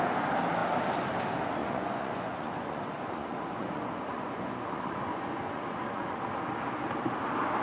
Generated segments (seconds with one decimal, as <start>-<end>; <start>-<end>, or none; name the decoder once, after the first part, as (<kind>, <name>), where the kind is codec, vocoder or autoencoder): 1.6-6.2 (vocoder, Vocos)